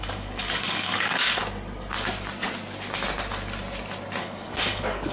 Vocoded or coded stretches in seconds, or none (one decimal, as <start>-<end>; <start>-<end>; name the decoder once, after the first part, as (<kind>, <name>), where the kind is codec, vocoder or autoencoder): 0.0-1.4 (codec, DAC); 4.2-5.1